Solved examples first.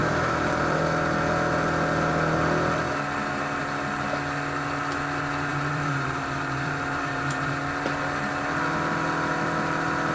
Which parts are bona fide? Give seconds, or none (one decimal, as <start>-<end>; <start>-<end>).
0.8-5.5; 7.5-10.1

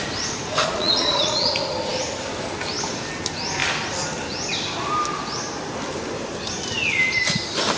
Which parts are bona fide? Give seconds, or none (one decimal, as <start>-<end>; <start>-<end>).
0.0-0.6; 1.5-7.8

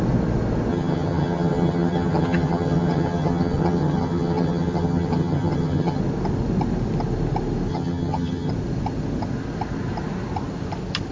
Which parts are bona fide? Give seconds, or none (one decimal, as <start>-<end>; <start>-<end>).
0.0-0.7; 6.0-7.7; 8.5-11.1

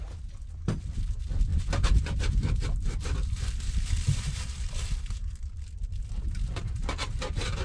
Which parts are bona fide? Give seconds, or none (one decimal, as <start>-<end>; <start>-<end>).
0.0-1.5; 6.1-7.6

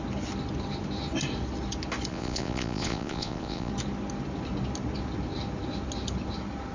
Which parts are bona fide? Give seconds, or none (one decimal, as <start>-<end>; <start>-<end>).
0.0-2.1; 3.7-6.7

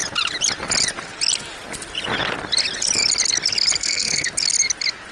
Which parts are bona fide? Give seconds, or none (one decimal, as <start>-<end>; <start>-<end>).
0.0-3.8; 4.3-5.1

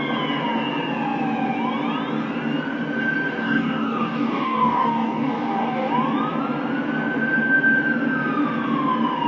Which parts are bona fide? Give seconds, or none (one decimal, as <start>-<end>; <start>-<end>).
0.0-3.4; 5.9-9.3